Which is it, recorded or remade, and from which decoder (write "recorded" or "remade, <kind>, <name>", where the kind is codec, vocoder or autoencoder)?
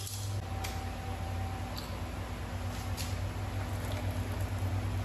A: recorded